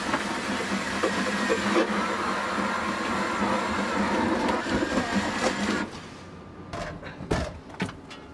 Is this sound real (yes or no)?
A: yes